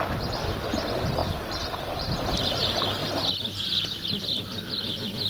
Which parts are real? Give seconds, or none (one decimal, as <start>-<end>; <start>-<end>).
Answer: 0.0-5.3